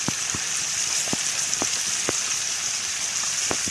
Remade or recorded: remade